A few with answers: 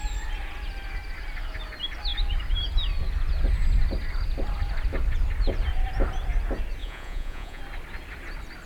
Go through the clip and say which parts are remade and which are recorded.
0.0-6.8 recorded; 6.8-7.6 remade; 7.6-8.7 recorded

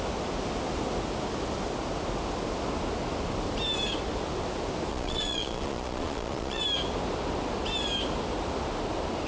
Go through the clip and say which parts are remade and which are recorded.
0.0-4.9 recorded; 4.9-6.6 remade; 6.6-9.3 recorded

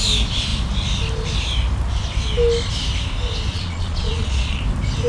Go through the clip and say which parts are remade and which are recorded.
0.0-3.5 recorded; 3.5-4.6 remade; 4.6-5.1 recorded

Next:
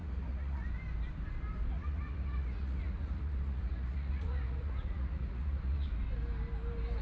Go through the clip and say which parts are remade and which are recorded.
0.0-0.7 remade; 0.7-1.7 recorded; 1.7-5.9 remade; 5.9-7.0 recorded